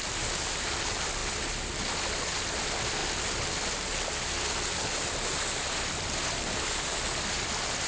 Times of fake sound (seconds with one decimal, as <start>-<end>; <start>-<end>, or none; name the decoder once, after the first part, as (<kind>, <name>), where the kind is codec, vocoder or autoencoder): none